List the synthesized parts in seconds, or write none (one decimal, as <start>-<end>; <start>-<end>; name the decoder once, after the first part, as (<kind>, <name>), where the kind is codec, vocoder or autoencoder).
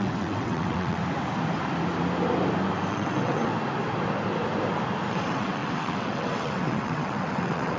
0.0-1.0 (vocoder, WaveNeXt); 2.9-3.5; 5.1-7.8